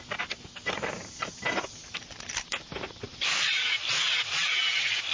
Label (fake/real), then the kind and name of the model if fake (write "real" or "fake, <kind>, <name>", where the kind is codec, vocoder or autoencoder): real